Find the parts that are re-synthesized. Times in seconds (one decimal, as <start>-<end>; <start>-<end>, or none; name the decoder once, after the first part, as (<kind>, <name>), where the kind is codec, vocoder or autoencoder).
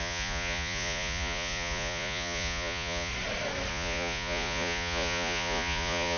0.0-3.1 (vocoder, Vocos); 3.7-6.2